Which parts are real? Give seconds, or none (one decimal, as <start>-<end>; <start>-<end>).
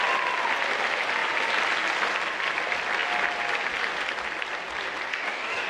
0.0-5.1